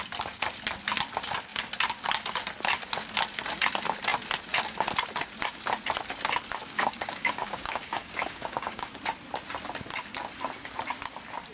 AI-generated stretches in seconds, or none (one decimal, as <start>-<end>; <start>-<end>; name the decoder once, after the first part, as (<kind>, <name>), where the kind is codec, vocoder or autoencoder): 6.6-9.0 (codec, DAC)